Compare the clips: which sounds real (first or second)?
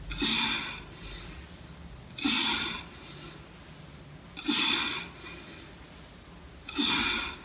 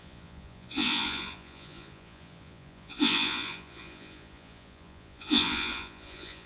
first